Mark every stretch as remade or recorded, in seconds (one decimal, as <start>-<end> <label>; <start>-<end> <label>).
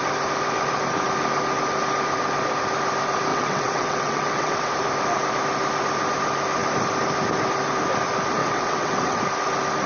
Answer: 0.0-3.3 recorded; 3.3-4.7 remade; 4.7-8.4 recorded; 8.4-9.2 remade; 9.2-9.9 recorded